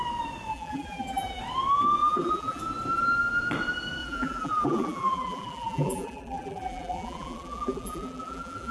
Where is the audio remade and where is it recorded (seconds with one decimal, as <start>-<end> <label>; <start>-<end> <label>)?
0.0-0.5 recorded; 0.5-1.4 remade; 1.4-2.0 recorded; 2.0-2.6 remade; 2.6-4.0 recorded; 4.0-8.7 remade